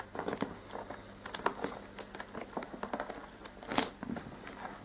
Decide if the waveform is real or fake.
real